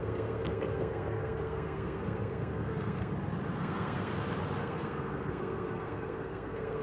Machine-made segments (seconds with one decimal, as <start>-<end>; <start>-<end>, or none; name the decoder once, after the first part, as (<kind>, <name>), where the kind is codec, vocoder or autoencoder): 0.0-3.1 (codec, SNAC); 3.6-4.1; 4.6-6.8